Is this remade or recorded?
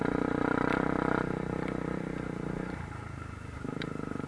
remade